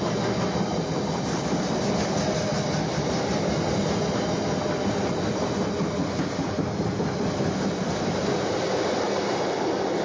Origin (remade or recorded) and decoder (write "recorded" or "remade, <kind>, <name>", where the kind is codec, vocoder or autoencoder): recorded